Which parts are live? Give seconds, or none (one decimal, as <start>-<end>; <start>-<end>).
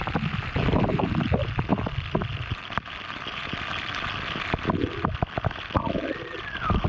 0.0-6.9